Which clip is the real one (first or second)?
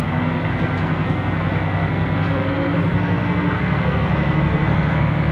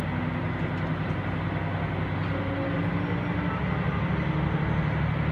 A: second